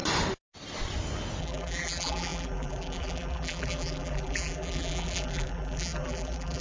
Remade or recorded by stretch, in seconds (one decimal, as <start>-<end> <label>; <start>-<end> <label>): 0.0-1.4 recorded; 1.4-6.6 remade